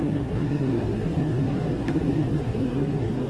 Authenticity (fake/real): fake